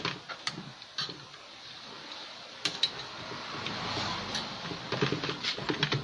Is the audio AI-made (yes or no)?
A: no